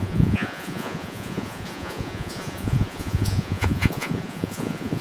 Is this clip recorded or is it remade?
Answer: remade